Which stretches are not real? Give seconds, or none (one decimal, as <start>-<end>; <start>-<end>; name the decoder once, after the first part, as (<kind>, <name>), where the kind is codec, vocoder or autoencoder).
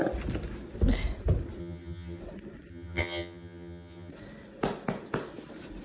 1.6-2.2 (vocoder, HiFi-GAN); 2.7-4.1